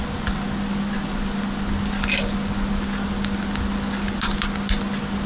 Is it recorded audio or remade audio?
recorded